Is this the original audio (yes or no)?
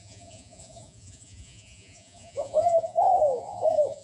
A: no